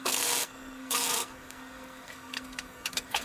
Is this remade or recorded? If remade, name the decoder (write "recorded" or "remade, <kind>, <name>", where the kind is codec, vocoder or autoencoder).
remade, codec, SNAC